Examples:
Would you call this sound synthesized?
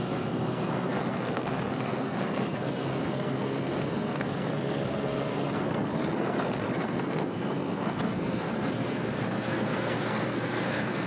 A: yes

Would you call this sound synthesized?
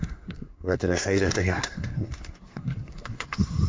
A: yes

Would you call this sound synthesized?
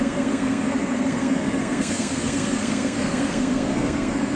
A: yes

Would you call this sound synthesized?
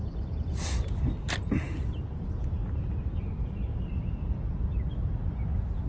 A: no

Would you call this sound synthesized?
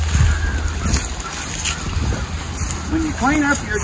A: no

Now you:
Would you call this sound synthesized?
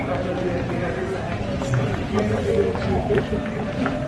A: no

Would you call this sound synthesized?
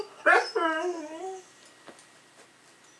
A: no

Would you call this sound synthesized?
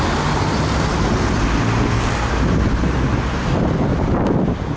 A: no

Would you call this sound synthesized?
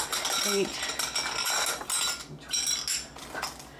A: no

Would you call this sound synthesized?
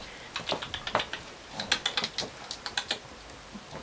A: no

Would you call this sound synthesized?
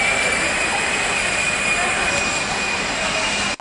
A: no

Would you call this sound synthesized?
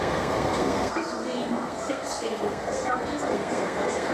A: yes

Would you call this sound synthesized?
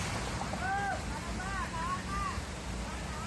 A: no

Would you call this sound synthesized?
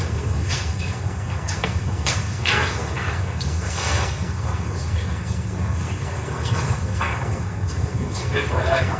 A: yes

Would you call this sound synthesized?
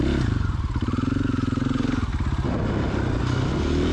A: no